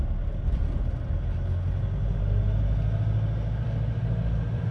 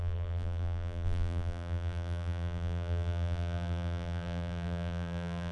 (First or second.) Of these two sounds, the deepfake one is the second